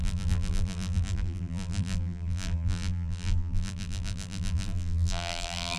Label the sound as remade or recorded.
remade